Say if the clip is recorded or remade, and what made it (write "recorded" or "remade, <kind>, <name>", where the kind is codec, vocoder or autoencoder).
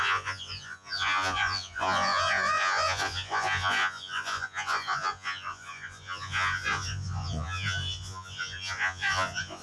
remade, vocoder, Vocos